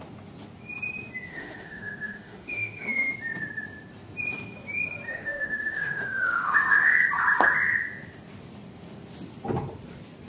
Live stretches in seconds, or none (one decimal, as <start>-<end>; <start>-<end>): 0.0-1.3; 3.1-5.1; 7.0-10.3